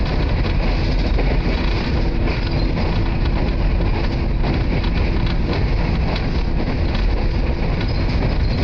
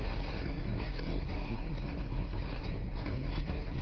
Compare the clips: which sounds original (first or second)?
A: first